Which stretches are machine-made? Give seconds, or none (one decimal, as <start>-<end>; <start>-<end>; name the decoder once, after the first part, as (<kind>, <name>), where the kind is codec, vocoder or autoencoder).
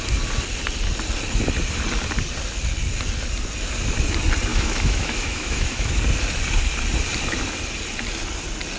4.5-5.9 (autoencoder, DAC-VAE)